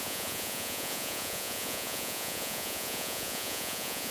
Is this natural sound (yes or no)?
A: no